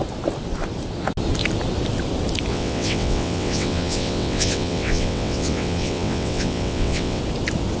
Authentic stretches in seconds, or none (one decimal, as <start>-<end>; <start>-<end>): 0.0-2.5; 7.2-7.8